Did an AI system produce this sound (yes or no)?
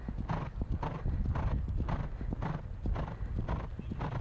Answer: no